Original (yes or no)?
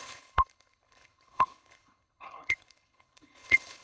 no